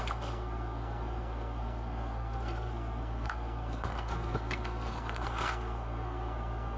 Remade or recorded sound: remade